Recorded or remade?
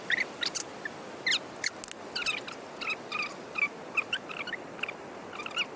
recorded